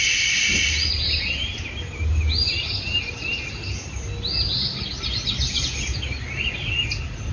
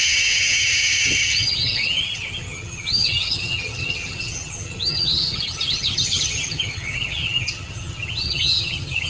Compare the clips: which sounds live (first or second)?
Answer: first